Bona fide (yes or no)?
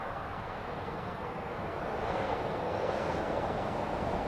no